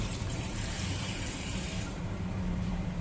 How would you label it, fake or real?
fake